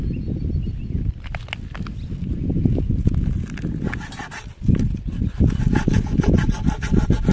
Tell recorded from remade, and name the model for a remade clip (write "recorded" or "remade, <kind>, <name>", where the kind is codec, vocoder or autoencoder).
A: recorded